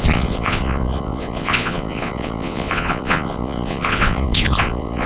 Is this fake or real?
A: fake